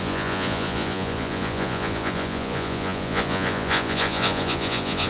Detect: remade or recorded remade